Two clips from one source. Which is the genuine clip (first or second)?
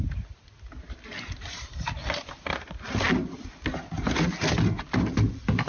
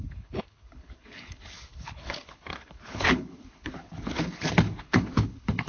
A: first